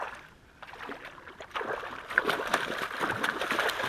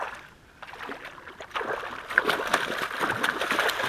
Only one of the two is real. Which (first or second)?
second